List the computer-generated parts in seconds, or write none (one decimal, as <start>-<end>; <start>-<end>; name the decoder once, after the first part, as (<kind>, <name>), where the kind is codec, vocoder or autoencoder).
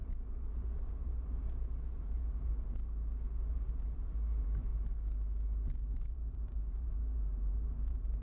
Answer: 0.0-2.7 (vocoder, BigVGAN v2); 3.5-4.7; 6.1-8.2